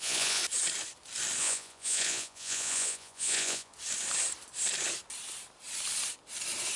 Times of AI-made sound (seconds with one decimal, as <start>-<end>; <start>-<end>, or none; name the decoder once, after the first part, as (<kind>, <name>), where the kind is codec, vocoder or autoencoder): 0.0-0.4 (vocoder, Vocos); 1.4-3.7

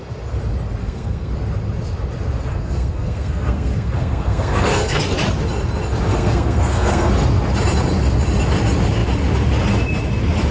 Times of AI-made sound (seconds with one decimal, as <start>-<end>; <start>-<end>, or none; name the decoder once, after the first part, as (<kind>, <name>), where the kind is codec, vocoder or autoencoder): 0.8-1.3 (codec, SNAC); 2.5-5.0; 6.1-7.1

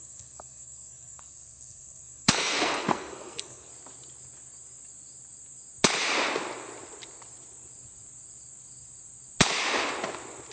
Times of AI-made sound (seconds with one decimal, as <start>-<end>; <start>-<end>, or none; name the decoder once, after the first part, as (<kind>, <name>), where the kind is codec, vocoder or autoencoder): 0.0-3.7 (codec, SNAC)

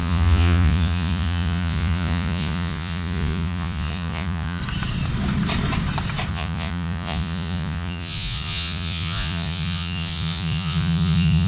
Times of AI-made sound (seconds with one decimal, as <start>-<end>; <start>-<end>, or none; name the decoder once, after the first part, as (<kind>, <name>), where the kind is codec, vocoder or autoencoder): 0.0-4.6 (vocoder, Vocos); 6.3-11.5

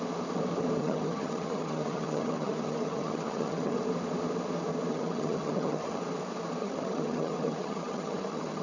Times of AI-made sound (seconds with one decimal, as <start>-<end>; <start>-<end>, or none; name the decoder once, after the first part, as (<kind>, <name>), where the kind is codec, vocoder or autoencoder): 0.8-3.8 (vocoder, HiFi-GAN); 4.9-6.0; 6.6-8.6

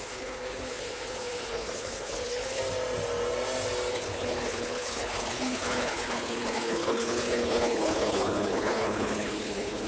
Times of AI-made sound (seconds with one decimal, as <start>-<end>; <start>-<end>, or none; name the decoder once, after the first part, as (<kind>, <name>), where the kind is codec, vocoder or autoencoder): 0.0-2.6 (codec, HILCodec); 3.9-9.9